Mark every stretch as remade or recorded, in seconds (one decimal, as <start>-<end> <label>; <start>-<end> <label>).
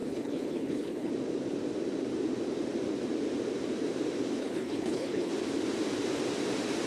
0.0-1.1 remade; 1.1-4.4 recorded; 4.4-5.3 remade; 5.3-6.9 recorded